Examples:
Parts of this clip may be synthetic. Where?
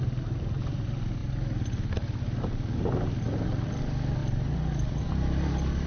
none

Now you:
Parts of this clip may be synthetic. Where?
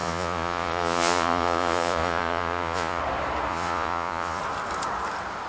0.0-3.0; 3.5-4.4